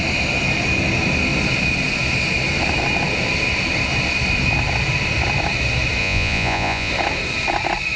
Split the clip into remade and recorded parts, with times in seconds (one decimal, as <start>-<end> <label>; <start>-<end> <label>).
0.0-6.0 recorded; 6.0-6.9 remade; 6.9-8.0 recorded